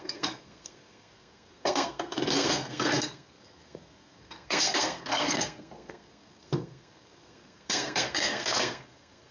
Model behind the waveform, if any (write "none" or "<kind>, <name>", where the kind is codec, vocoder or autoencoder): codec, SNAC